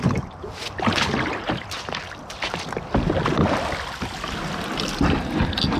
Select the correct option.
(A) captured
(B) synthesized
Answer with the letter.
A